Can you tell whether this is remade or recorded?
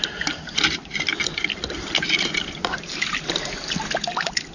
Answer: recorded